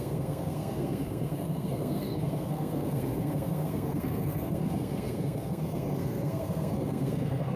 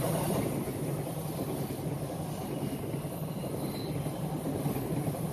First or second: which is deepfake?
first